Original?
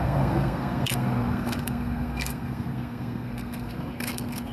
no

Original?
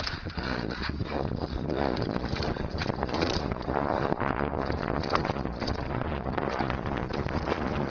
no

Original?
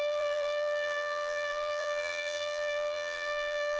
no